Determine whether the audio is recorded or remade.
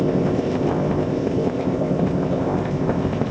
remade